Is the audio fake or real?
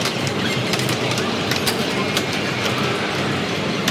real